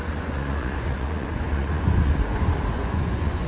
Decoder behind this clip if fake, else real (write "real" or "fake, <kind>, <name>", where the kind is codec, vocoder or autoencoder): fake, vocoder, Vocos